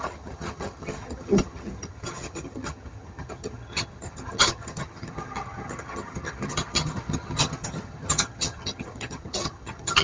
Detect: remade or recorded remade